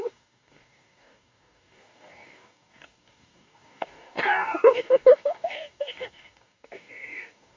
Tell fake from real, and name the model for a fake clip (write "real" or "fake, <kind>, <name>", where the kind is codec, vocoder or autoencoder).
fake, codec, DAC